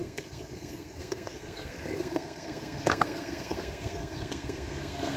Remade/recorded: remade